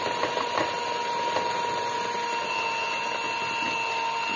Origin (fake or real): real